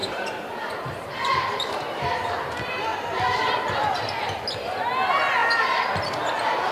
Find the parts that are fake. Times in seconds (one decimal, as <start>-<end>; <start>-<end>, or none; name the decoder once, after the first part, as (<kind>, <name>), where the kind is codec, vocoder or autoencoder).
0.0-2.5 (vocoder, BigVGAN v2)